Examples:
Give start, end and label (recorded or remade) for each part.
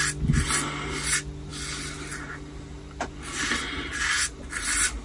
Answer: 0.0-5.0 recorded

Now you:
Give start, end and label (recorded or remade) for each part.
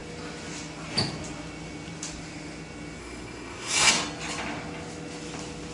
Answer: 0.0-3.0 recorded; 3.0-3.9 remade; 3.9-5.7 recorded